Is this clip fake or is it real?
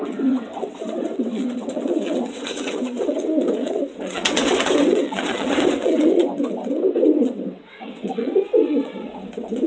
fake